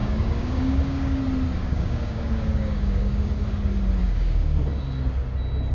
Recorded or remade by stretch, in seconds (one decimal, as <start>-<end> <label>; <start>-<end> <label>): 0.0-1.2 remade; 1.2-1.6 recorded; 1.6-3.3 remade; 3.3-4.0 recorded; 4.0-4.6 remade; 4.6-5.7 recorded